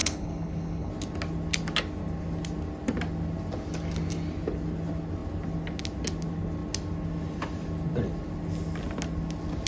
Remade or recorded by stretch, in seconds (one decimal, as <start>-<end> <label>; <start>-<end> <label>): 0.0-0.9 remade; 0.9-9.7 recorded